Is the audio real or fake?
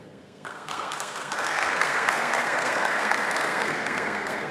fake